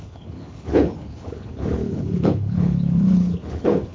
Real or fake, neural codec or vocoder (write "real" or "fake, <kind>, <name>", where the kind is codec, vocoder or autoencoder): fake, codec, HILCodec